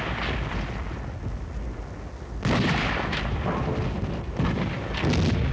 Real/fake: real